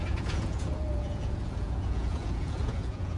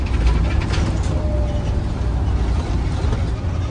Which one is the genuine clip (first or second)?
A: second